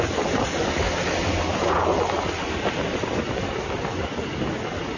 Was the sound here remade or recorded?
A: recorded